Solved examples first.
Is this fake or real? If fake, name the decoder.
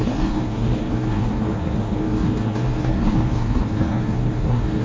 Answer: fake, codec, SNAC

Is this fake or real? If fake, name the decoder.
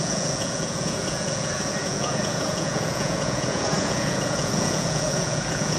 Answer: fake, vocoder, Vocos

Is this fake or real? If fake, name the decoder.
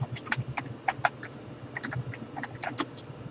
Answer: real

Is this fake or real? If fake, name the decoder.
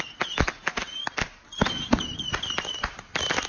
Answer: real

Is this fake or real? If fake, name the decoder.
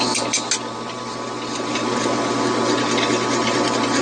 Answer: real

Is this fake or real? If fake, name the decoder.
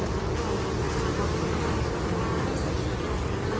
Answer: real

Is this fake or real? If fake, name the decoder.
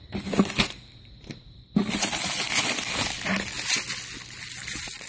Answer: real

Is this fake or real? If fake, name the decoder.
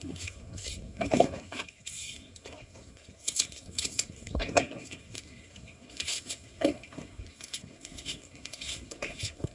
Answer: fake, codec, SNAC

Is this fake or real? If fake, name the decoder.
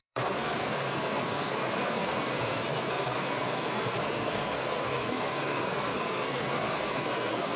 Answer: fake, codec, SNAC